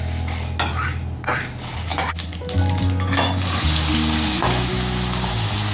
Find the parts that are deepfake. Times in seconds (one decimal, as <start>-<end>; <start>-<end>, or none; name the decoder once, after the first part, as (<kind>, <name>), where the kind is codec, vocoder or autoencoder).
none